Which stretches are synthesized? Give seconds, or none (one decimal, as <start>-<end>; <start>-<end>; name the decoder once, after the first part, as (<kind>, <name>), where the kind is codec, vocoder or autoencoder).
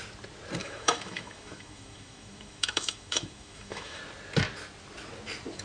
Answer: 0.6-4.0 (autoencoder, DAC-VAE)